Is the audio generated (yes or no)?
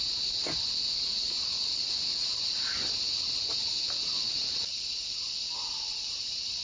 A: no